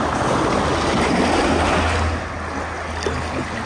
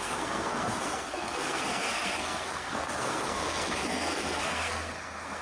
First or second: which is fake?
second